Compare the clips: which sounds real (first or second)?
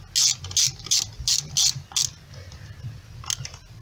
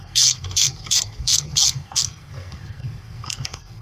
first